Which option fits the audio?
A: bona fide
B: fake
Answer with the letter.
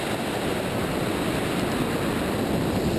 B